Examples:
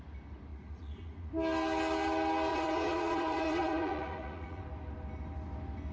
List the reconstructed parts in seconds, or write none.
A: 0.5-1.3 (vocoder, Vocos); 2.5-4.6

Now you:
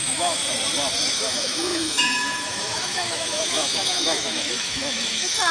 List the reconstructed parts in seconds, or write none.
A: 0.0-0.4 (autoencoder, DAC-VAE); 1.1-5.5

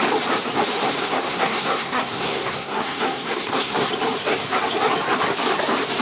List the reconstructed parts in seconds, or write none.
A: 1.0-3.9 (codec, SNAC)

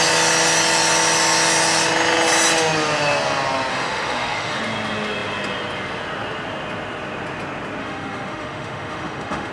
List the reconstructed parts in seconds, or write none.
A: 3.7-4.6 (autoencoder, DAC-VAE); 7.8-9.5

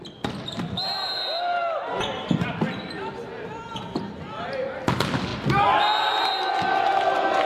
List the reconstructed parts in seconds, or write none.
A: none

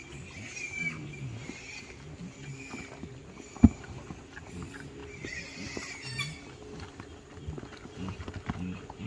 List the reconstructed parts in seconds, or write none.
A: none

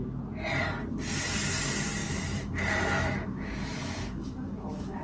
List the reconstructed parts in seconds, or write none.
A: 2.0-5.0 (autoencoder, DAC-VAE)

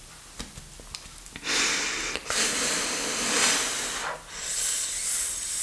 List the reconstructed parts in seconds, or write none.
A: 2.2-2.9 (vocoder, BigVGAN v2)